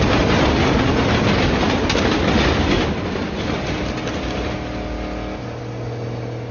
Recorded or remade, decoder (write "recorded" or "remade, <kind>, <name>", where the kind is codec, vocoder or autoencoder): recorded